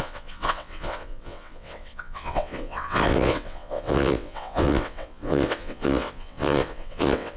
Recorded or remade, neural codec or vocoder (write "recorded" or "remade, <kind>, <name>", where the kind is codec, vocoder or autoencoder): remade, vocoder, WaveNeXt